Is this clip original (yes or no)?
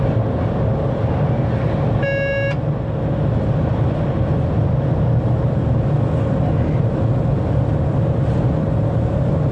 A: yes